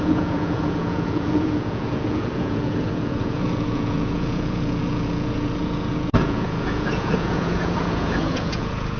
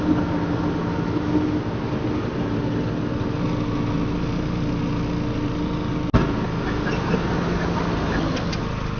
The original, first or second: second